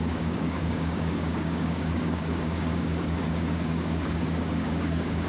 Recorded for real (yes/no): no